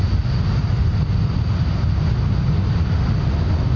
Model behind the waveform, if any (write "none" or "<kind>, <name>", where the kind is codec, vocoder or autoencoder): none